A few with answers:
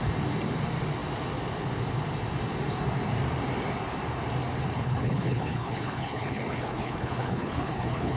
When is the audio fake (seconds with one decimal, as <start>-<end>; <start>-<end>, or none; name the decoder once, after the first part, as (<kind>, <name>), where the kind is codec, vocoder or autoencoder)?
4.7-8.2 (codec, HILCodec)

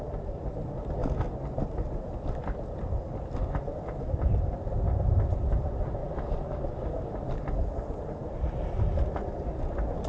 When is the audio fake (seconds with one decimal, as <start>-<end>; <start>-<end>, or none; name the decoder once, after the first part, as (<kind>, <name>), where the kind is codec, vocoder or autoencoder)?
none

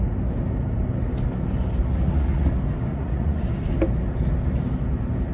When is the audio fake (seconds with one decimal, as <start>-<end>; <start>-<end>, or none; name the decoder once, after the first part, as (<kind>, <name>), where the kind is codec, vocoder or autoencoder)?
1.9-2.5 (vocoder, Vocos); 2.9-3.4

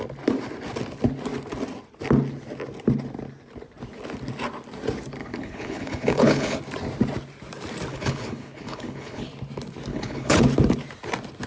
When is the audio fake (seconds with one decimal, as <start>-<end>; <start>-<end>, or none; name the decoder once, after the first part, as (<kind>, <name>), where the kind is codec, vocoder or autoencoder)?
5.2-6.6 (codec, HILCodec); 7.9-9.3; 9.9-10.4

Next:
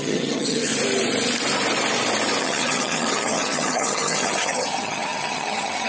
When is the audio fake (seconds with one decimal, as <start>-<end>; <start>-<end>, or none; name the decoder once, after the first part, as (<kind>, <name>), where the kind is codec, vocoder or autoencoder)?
0.0-0.7 (vocoder, HiFi-GAN); 2.4-5.9